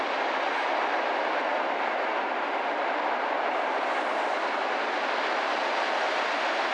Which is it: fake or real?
real